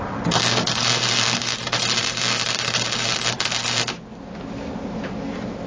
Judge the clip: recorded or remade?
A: recorded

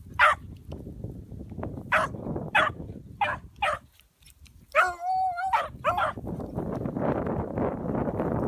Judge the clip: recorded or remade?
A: recorded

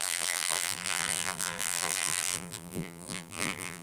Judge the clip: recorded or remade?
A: remade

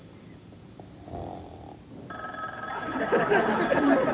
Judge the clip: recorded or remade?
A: recorded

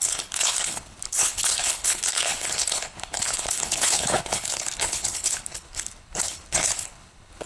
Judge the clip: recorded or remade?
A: remade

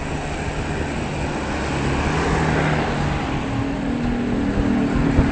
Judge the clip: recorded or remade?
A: recorded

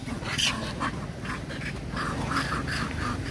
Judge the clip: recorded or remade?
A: recorded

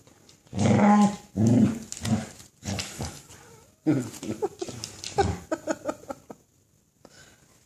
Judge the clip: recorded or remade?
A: recorded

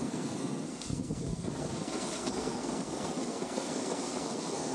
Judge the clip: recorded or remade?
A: remade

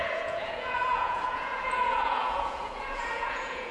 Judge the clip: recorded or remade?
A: remade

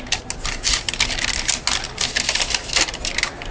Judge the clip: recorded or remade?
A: recorded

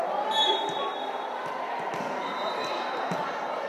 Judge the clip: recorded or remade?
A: recorded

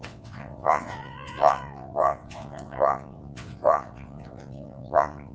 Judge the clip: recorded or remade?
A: remade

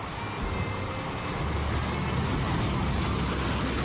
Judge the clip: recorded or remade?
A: recorded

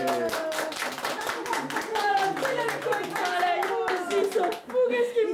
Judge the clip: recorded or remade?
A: recorded